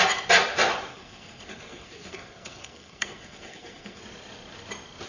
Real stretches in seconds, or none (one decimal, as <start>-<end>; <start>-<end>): 0.0-0.9; 4.0-5.1